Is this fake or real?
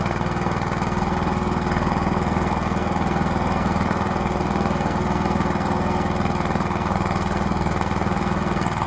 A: fake